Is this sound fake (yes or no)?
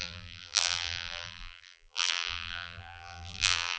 yes